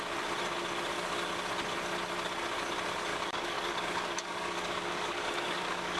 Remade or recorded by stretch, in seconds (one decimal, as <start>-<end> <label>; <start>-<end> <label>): 0.0-3.1 recorded; 3.1-6.0 remade